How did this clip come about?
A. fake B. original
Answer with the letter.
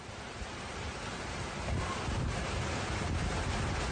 B